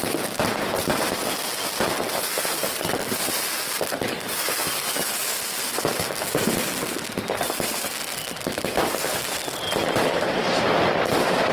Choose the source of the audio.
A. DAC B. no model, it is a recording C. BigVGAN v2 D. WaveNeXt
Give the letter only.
B